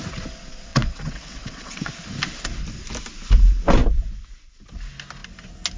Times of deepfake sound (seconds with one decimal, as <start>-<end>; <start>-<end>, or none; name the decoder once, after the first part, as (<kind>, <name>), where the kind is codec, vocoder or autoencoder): 0.7-1.9 (vocoder, WaveNeXt)